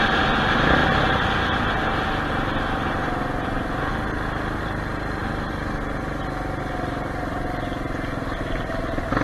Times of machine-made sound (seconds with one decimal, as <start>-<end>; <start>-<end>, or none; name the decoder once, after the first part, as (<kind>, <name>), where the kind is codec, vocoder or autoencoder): none

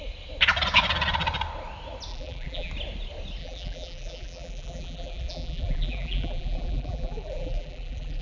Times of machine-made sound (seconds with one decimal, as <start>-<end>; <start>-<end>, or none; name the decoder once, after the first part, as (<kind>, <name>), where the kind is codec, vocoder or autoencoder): 2.1-2.7 (vocoder, BigVGAN v2); 3.4-8.2

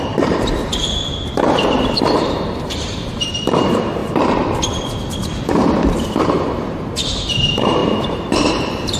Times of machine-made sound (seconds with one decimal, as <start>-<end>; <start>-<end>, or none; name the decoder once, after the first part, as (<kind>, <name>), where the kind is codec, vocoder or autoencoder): 0.0-4.0 (vocoder, BigVGAN v2); 5.9-9.0

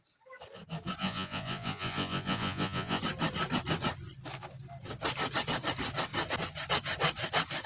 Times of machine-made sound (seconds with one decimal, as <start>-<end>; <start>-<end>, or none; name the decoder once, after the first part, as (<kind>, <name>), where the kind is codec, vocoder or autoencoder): 1.0-3.0 (vocoder, Vocos)